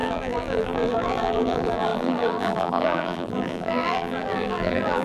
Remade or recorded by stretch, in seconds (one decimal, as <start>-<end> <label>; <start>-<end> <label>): 0.0-5.0 remade